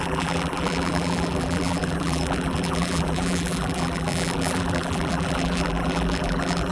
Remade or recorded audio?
remade